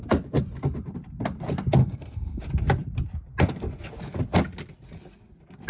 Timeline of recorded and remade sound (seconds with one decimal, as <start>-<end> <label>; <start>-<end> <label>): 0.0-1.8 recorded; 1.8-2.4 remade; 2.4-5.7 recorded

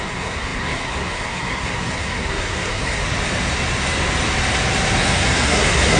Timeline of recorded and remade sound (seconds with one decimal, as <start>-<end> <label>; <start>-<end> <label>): 0.0-3.0 remade; 3.0-5.0 recorded; 5.0-6.0 remade

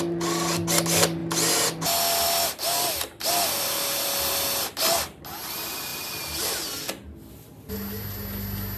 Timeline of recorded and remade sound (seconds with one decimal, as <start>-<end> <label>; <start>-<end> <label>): 0.0-8.8 recorded